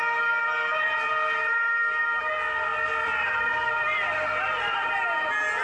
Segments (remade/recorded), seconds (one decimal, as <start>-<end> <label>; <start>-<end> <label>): 0.0-0.4 recorded; 0.4-2.2 remade; 2.2-2.7 recorded; 2.7-4.9 remade; 4.9-5.6 recorded